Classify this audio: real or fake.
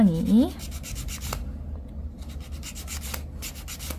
real